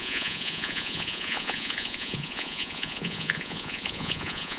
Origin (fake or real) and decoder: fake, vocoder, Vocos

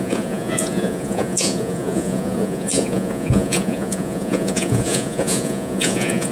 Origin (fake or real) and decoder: fake, vocoder, Vocos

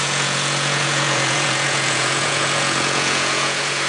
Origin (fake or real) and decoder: fake, vocoder, Vocos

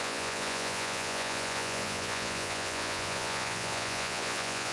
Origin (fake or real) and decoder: fake, vocoder, Vocos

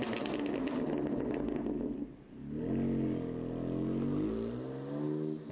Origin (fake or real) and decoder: real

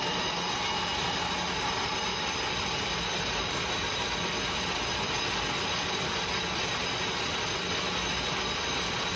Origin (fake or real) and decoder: real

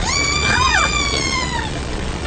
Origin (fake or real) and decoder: fake, vocoder, Vocos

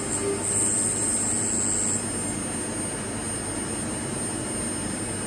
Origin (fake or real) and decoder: real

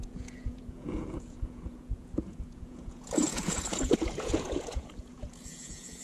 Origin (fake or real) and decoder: fake, vocoder, Vocos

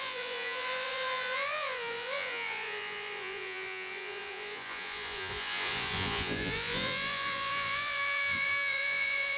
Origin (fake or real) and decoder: fake, vocoder, Vocos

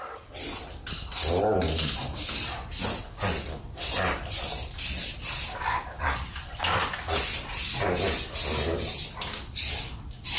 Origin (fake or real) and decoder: real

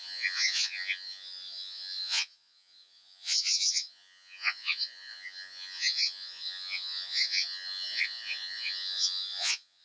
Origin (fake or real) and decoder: fake, vocoder, Vocos